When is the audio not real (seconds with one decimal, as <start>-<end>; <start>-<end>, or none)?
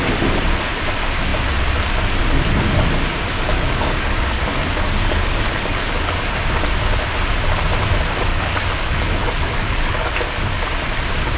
3.2-6.3; 8.3-10.6